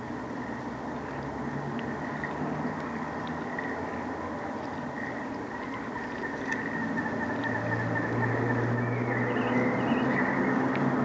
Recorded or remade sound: recorded